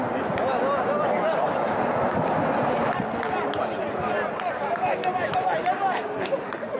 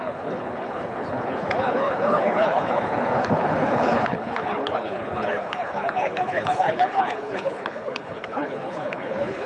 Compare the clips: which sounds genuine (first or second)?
first